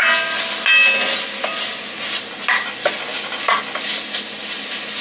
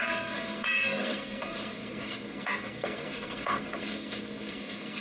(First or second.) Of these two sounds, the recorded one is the first